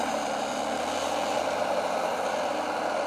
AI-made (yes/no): no